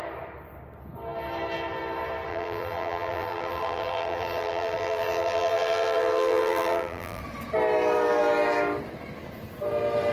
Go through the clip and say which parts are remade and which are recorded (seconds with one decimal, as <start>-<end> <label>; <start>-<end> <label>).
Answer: 0.0-2.3 recorded; 2.3-7.2 remade; 7.2-10.1 recorded